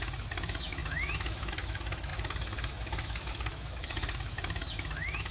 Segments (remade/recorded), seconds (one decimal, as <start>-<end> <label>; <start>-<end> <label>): 0.0-5.3 remade